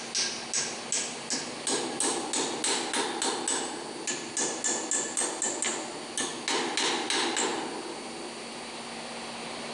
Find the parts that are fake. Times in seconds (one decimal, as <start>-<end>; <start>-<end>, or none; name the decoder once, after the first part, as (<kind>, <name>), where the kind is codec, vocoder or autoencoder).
none